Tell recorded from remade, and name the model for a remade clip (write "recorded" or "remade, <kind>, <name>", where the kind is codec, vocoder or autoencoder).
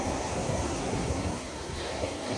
remade, codec, SNAC